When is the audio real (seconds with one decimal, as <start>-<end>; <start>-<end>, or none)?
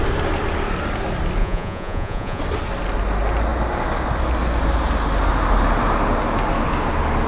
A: 0.0-1.4; 2.4-7.3